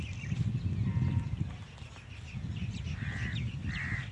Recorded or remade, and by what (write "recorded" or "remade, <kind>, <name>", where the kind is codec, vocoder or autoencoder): recorded